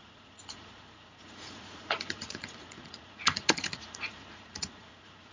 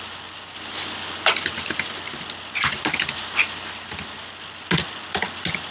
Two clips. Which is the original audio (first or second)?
second